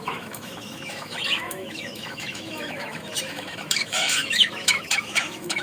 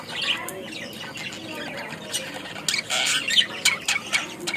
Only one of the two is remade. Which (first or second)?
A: first